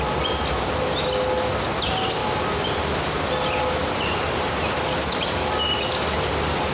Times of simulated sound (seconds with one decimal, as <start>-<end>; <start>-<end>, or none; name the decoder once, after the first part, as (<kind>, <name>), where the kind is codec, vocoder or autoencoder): none